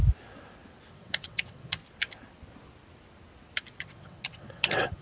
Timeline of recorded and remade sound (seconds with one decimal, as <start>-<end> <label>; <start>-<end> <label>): 0.0-0.9 recorded; 0.9-1.8 remade; 1.8-3.8 recorded; 3.8-5.0 remade